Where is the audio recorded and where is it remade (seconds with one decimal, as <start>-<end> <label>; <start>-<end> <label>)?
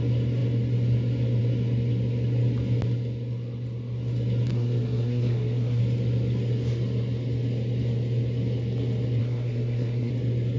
0.0-4.5 recorded; 4.5-5.8 remade; 5.8-9.2 recorded; 9.2-10.1 remade; 10.1-10.6 recorded